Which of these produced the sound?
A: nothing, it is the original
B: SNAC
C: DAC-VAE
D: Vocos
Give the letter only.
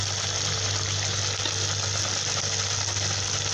A